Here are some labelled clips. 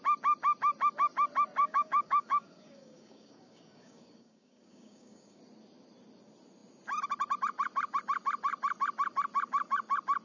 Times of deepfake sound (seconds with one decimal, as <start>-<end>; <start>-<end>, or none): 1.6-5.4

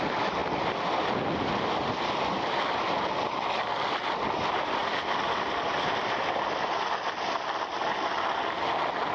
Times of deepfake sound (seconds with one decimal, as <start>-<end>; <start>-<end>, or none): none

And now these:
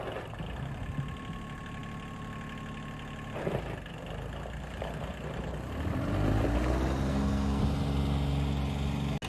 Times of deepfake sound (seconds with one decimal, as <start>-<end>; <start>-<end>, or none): 7.1-7.6

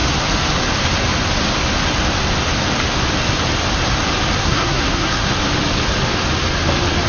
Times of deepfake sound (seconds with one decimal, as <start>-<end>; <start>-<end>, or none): 4.4-5.3

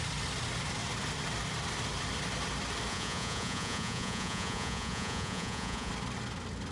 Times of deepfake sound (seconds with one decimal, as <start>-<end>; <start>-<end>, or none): 2.9-5.9